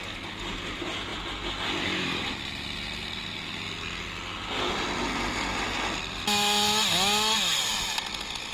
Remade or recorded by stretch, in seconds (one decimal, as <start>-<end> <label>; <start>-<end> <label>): 0.0-8.5 recorded